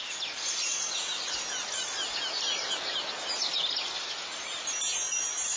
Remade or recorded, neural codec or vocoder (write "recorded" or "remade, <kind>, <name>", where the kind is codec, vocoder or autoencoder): recorded